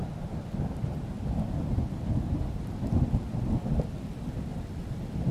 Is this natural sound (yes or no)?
yes